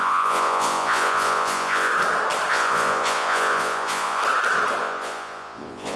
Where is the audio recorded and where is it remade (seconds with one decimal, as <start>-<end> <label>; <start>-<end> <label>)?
0.0-1.9 remade; 1.9-2.5 recorded; 2.5-4.2 remade; 4.2-4.8 recorded; 4.8-6.0 remade